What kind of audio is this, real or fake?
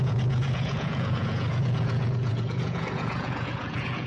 fake